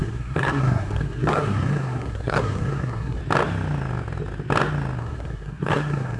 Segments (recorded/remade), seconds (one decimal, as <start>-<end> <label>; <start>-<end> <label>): 0.0-3.2 remade; 3.2-5.0 recorded; 5.0-6.2 remade